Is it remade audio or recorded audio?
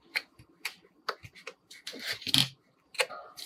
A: recorded